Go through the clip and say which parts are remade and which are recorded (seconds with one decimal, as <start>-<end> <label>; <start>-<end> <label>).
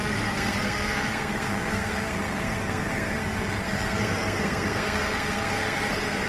0.0-6.3 remade